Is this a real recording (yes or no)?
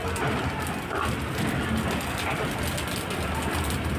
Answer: yes